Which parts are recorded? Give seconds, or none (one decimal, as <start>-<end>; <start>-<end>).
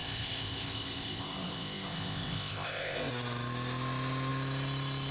3.1-5.1